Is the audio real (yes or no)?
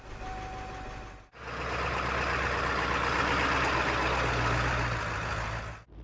yes